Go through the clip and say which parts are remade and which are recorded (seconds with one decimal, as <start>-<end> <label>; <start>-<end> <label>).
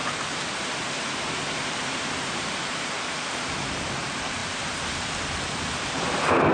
0.0-4.4 remade; 4.4-6.5 recorded